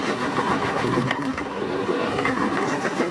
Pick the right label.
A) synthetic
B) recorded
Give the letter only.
A